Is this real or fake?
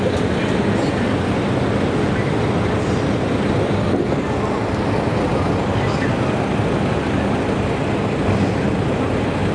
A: real